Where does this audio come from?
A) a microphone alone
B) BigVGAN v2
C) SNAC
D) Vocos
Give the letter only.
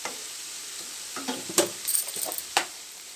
B